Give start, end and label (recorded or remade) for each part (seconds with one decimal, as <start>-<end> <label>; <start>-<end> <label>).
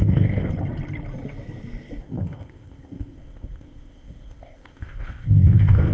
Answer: 0.0-0.5 remade; 0.5-2.0 recorded; 2.0-5.9 remade